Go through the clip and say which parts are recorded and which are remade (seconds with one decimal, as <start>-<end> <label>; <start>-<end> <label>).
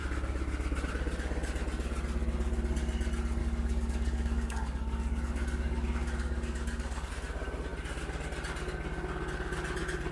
0.0-3.4 recorded; 3.4-7.1 remade; 7.1-10.1 recorded